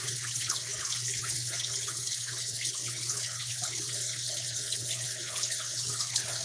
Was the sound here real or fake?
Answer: fake